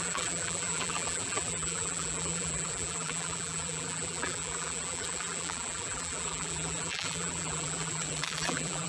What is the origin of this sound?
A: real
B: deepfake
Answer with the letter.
B